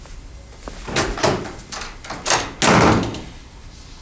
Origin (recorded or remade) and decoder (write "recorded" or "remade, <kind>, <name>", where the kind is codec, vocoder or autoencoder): recorded